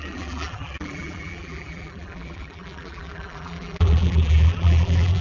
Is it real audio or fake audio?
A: fake